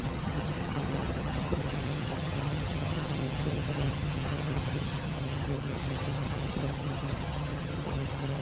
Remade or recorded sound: remade